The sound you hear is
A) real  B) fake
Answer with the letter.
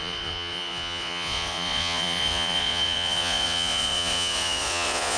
B